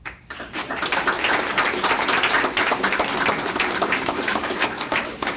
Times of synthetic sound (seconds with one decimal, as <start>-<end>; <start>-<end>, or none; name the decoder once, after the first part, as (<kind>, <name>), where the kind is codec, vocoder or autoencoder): 0.0-0.6 (codec, DAC); 3.8-5.4